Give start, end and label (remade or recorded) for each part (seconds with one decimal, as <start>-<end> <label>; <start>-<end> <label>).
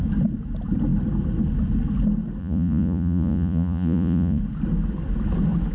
0.0-2.4 recorded; 2.4-4.4 remade; 4.4-5.7 recorded